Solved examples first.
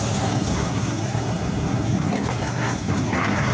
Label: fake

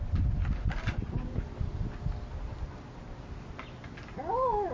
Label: real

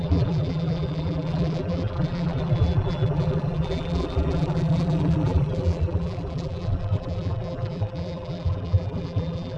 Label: fake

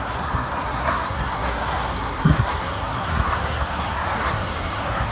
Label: fake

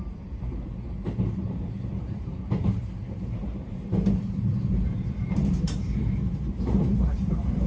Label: fake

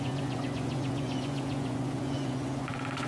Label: fake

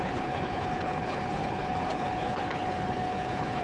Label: fake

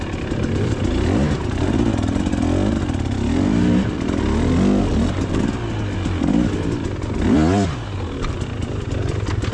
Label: real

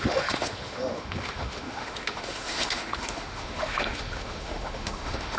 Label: fake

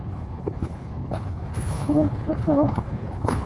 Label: fake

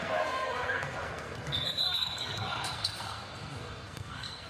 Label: fake